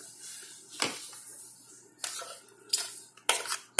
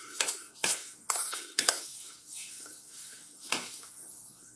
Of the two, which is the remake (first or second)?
second